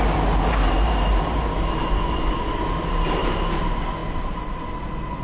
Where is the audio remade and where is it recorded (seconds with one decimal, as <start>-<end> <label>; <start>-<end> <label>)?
0.0-4.0 recorded; 4.0-4.6 remade; 4.6-5.2 recorded